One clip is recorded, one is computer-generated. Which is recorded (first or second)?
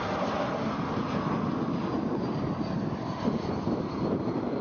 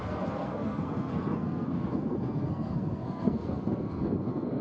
first